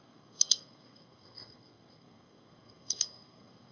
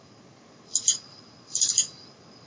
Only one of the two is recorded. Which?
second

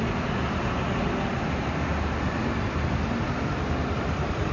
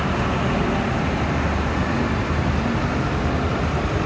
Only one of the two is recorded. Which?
second